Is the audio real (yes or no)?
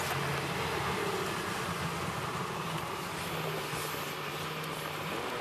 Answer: yes